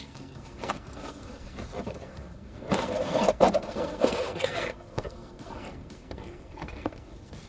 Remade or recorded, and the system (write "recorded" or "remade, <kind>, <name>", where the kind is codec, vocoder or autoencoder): remade, codec, SNAC